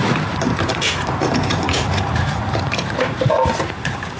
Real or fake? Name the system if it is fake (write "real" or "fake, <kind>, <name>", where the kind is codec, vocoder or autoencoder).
fake, vocoder, BigVGAN v2